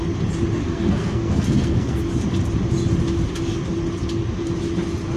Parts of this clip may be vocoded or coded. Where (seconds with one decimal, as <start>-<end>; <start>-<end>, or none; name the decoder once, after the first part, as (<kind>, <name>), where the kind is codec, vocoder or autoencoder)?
0.6-2.0 (codec, SNAC)